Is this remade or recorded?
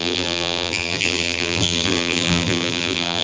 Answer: remade